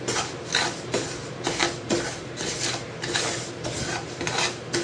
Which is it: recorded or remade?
recorded